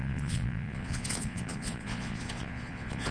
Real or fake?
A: fake